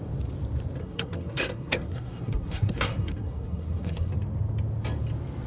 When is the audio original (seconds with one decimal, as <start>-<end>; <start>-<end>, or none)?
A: 0.0-0.8; 4.1-5.5